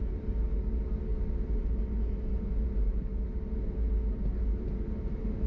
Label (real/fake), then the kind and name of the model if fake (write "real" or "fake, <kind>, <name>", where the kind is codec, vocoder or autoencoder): real